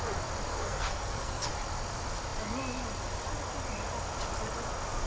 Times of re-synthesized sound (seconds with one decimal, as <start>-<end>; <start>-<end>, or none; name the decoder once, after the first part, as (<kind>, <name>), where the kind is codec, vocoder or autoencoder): 0.5-1.5 (codec, SNAC)